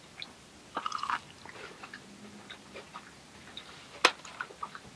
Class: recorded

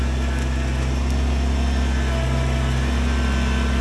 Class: recorded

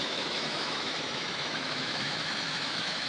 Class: remade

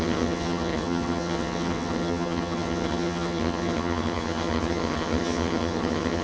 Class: remade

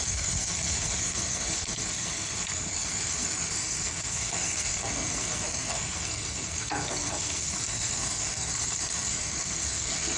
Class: remade